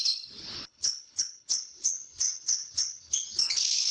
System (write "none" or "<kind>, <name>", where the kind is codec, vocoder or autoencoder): codec, HILCodec